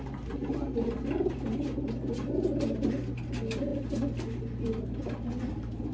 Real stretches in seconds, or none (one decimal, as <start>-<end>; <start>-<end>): 0.0-5.9

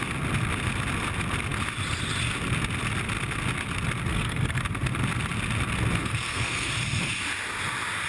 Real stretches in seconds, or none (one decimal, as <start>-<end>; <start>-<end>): 0.0-4.1; 4.6-6.0; 6.7-8.1

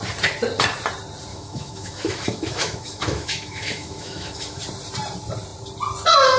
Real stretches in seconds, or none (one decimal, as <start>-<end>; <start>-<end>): 0.0-1.3; 4.6-6.4

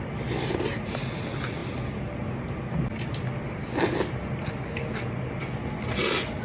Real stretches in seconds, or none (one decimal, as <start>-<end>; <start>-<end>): 0.0-6.4

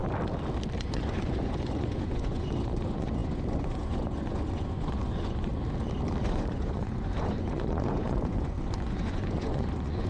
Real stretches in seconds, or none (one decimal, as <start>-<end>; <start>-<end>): 0.0-0.8; 5.5-6.2

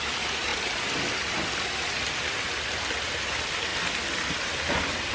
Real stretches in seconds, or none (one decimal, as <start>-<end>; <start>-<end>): 0.0-5.1